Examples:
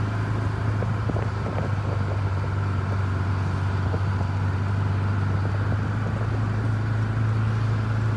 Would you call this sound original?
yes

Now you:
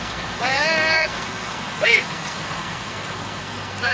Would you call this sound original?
no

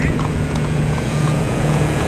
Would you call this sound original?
no